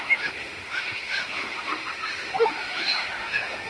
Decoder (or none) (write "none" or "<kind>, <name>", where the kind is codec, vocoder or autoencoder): autoencoder, DAC-VAE